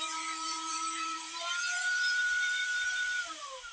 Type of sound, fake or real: fake